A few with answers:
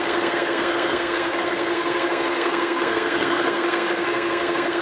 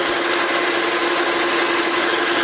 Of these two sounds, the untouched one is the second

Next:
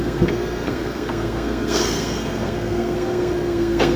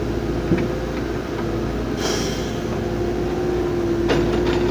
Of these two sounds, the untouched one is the second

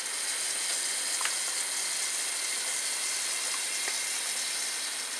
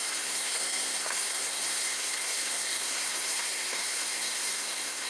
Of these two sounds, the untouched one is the first